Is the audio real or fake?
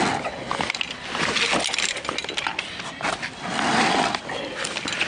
real